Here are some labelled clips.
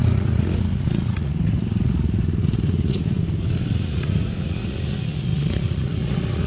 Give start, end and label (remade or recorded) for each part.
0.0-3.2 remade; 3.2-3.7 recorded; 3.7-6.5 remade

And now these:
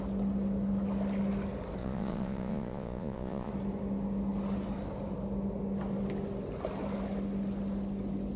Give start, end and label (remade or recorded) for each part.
0.0-1.8 recorded; 1.8-3.5 remade; 3.5-8.4 recorded

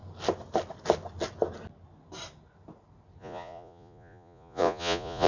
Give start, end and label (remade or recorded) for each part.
0.0-3.2 recorded; 3.2-5.3 remade

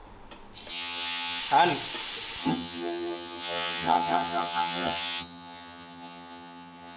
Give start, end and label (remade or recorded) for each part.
0.0-0.7 recorded; 0.7-1.4 remade; 1.4-2.4 recorded; 2.4-7.0 remade

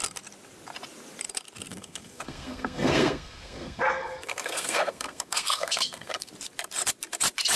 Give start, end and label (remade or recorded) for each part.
0.0-1.7 recorded; 1.7-6.3 remade; 6.3-7.6 recorded

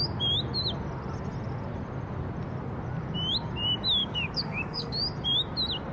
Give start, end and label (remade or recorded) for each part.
0.0-4.0 recorded; 4.0-5.0 remade; 5.0-5.9 recorded